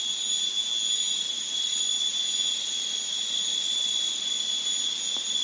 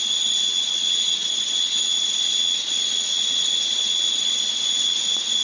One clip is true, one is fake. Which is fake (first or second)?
second